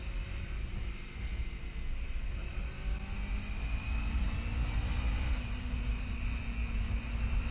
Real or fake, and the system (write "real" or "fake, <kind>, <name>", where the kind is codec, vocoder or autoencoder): real